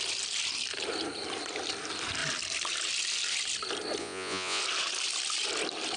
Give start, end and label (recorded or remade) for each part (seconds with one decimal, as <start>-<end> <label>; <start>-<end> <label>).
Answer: 0.0-4.0 recorded; 4.0-4.6 remade; 4.6-6.0 recorded